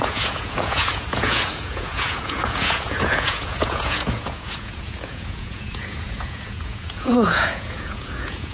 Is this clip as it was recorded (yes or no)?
no